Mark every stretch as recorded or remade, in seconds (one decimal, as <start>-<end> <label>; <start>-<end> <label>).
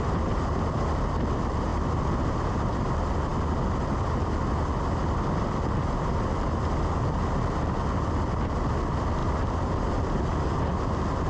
0.0-1.7 recorded; 1.7-2.8 remade; 2.8-11.3 recorded